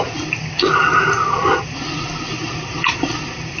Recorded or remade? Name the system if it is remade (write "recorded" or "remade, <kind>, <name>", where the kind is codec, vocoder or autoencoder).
recorded